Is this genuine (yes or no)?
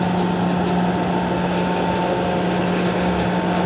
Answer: yes